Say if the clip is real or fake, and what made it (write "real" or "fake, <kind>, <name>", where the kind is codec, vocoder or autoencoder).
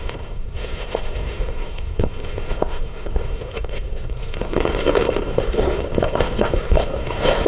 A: fake, codec, SNAC